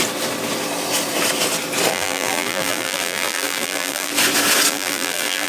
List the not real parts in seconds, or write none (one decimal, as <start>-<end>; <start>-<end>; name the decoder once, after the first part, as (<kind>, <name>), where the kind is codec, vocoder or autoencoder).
1.9-4.1 (vocoder, BigVGAN v2); 4.7-5.5